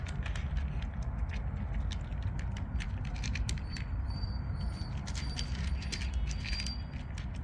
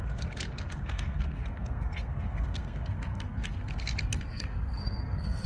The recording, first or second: first